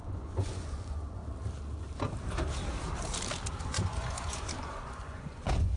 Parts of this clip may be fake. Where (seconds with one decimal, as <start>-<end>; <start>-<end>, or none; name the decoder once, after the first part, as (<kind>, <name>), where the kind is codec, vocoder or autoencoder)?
0.0-1.2 (vocoder, Vocos); 3.6-5.8